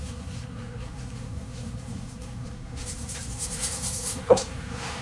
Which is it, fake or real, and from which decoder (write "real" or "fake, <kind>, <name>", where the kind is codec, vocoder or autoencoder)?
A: fake, codec, SNAC